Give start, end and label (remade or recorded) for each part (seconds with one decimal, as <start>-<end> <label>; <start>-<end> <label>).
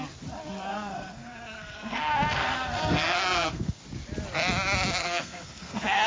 0.0-0.7 recorded; 0.7-3.8 remade; 3.8-5.0 recorded; 5.0-6.1 remade